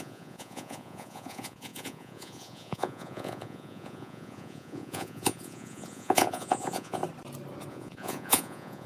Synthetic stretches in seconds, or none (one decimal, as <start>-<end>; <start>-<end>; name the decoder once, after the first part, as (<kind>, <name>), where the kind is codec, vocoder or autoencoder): 0.0-7.0 (vocoder, Vocos); 7.7-8.9